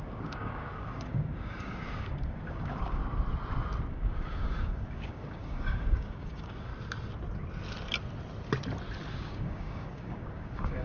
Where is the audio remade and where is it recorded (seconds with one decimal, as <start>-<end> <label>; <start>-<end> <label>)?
0.0-3.0 remade; 3.0-3.9 recorded; 3.9-6.7 remade; 6.7-9.1 recorded; 9.1-10.8 remade